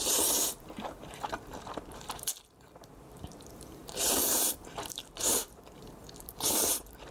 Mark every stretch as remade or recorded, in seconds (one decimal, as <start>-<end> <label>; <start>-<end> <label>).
0.0-7.1 remade